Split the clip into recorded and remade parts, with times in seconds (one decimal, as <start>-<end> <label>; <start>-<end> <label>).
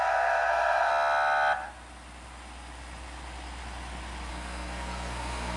0.0-0.9 remade; 0.9-4.3 recorded; 4.3-5.6 remade